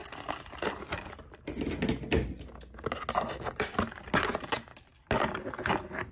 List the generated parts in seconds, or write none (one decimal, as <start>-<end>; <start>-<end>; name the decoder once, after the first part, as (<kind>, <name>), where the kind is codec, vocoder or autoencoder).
none